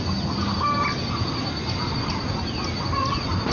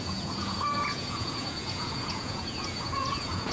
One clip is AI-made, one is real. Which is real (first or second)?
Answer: first